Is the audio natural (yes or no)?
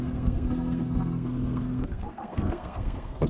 no